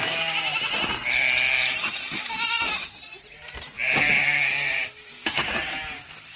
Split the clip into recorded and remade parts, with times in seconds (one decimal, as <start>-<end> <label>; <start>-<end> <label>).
0.0-5.2 recorded; 5.2-5.8 remade; 5.8-6.4 recorded